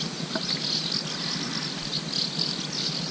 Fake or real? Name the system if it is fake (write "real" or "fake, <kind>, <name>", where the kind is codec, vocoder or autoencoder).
real